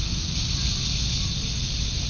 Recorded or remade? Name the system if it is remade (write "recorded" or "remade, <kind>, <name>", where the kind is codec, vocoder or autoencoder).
recorded